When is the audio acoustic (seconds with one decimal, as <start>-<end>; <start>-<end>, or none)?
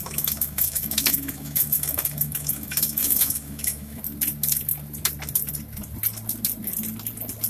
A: 4.0-7.5